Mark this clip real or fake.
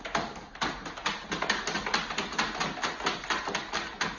real